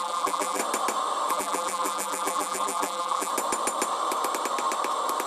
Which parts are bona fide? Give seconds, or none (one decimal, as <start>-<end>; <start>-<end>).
0.6-1.3; 3.3-5.3